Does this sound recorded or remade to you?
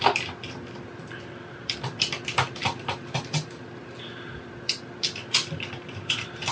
recorded